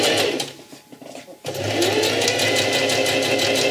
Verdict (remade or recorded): recorded